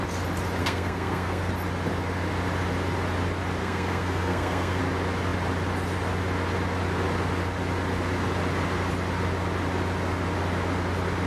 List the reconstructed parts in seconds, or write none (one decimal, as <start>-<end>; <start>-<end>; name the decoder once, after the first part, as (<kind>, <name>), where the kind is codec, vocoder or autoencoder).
0.6-1.5 (codec, SNAC); 3.6-4.8